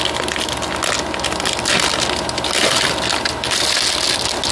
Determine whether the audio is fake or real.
real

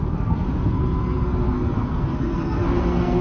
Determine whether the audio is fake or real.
fake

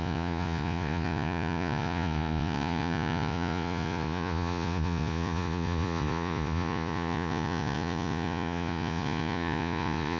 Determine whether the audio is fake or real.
fake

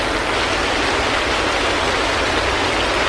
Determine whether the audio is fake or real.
real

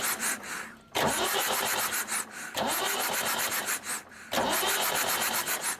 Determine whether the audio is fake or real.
real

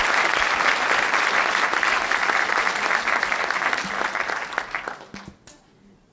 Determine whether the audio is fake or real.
real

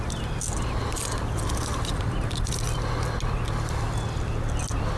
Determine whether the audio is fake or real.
real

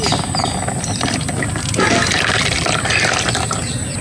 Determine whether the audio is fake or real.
real